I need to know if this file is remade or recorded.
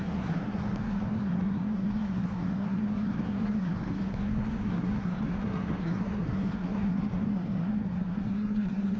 remade